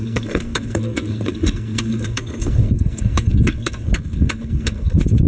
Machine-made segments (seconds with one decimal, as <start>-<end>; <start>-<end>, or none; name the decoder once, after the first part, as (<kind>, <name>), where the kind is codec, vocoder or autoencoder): 0.0-5.3 (codec, SNAC)